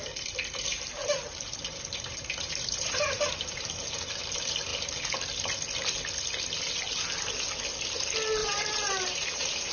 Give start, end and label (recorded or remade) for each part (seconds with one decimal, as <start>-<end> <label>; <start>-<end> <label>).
0.0-1.0 recorded; 1.0-4.2 remade; 4.2-8.4 recorded; 8.4-9.7 remade